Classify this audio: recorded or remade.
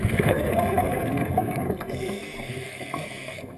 remade